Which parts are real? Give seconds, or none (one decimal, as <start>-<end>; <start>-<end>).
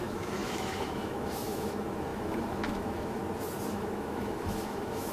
3.2-3.7